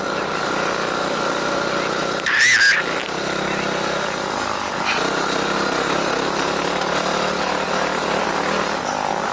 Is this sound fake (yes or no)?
no